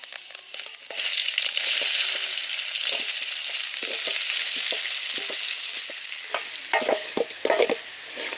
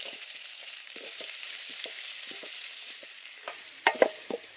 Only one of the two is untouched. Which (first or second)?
first